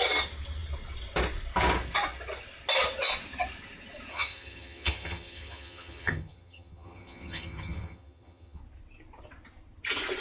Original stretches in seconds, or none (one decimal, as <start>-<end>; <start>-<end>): 0.0-4.1; 8.6-10.2